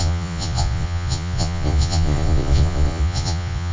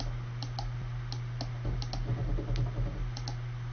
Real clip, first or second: second